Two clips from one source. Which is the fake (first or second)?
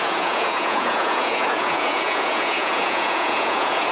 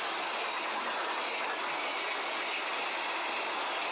first